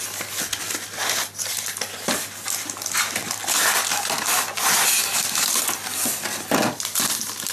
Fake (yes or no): no